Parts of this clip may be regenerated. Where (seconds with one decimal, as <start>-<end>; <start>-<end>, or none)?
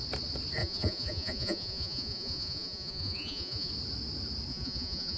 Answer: 0.6-3.7; 4.5-5.2